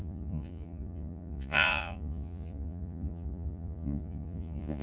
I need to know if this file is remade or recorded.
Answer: remade